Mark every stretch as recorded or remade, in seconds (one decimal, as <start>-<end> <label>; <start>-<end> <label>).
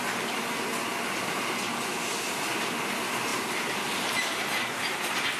0.0-3.3 recorded; 3.3-3.9 remade; 3.9-5.4 recorded